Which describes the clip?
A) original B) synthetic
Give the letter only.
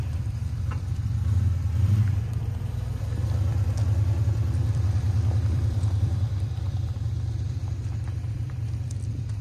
B